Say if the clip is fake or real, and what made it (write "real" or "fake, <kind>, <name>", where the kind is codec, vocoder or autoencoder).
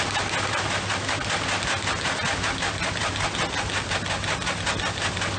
real